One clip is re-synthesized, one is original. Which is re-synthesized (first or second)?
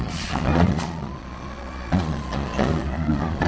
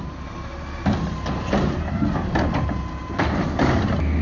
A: first